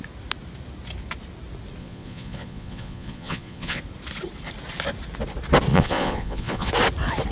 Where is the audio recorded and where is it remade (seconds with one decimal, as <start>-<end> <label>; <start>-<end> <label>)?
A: 0.0-1.8 recorded; 1.8-3.8 remade; 3.8-5.7 recorded; 5.7-6.7 remade; 6.7-7.3 recorded